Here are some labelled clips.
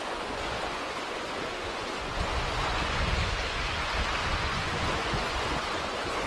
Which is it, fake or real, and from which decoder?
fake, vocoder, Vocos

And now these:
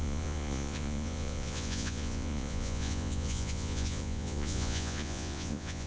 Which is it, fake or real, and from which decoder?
fake, vocoder, Vocos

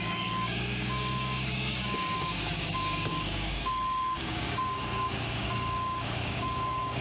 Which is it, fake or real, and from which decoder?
fake, codec, DAC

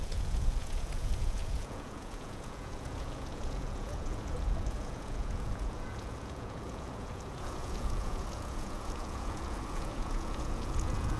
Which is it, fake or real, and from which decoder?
fake, vocoder, Vocos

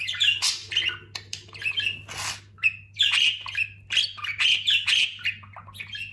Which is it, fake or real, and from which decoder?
real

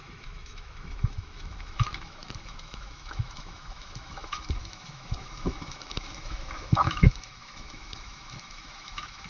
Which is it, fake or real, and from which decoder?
fake, autoencoder, DAC-VAE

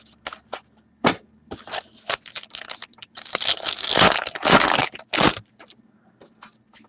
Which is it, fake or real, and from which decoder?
real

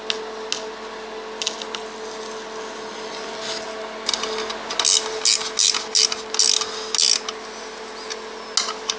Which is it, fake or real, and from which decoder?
real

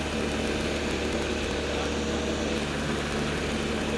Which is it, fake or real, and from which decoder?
real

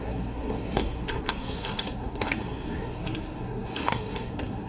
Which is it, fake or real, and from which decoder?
fake, codec, SNAC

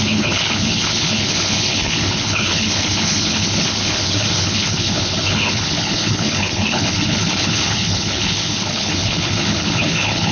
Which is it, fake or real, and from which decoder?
fake, codec, HILCodec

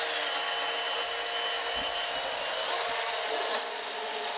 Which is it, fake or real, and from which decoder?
real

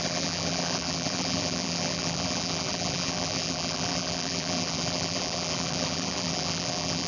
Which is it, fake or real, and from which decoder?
fake, vocoder, BigVGAN v2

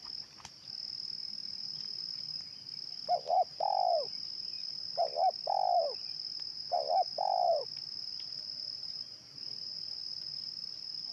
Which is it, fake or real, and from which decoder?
real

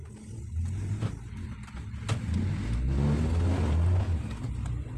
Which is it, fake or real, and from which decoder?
real